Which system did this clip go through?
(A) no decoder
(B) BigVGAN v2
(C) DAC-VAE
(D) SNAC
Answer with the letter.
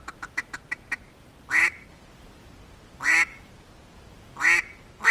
A